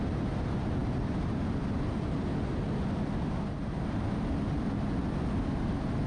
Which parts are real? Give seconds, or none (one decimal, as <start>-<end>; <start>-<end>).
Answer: 0.0-6.1